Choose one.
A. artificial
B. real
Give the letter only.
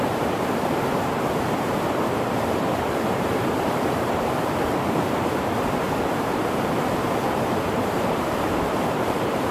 A